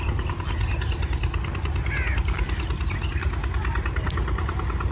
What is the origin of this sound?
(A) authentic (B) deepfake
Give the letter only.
A